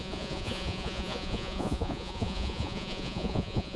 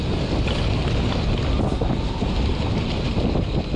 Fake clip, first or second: first